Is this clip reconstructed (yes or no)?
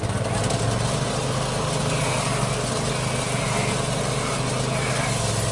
no